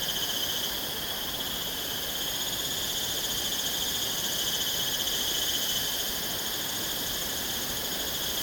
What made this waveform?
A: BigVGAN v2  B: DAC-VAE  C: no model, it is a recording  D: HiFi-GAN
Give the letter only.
C